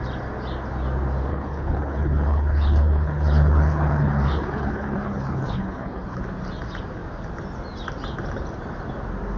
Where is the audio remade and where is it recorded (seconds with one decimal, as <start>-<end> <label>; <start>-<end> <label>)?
0.0-1.3 recorded; 1.3-6.2 remade; 6.2-9.4 recorded